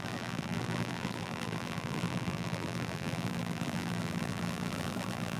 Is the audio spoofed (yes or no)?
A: yes